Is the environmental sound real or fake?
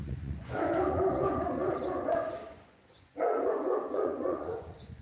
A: fake